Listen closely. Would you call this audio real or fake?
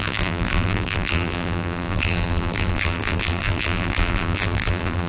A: fake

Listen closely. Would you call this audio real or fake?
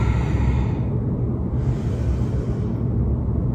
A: real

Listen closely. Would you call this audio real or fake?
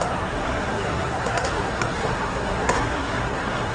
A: fake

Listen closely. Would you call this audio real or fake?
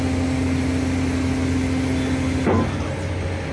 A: real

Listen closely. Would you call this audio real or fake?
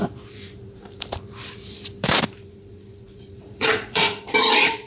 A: fake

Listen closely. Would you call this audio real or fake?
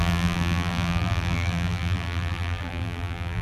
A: fake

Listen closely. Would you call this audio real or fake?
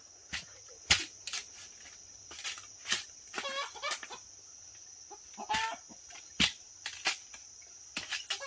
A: real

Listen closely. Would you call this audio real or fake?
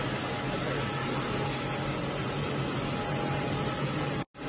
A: real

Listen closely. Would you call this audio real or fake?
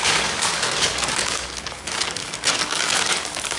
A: fake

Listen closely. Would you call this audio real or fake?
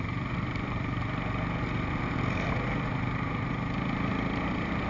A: fake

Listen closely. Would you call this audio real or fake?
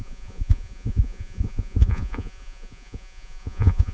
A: fake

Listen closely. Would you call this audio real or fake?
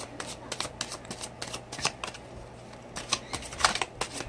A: real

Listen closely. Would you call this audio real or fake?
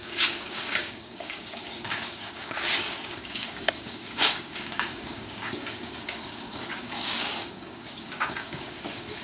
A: fake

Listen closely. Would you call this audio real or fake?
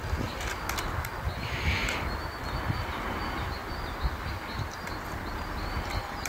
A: real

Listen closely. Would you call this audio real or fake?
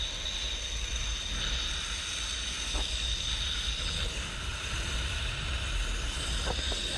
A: real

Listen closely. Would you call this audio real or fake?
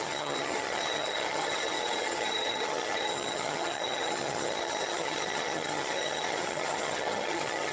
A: fake